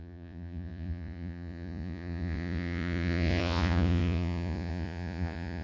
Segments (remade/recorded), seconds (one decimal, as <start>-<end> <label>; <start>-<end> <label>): 0.0-5.6 remade